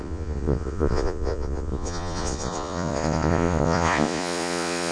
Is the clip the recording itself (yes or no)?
no